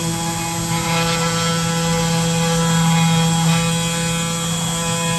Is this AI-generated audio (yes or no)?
no